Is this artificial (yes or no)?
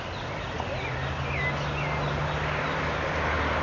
no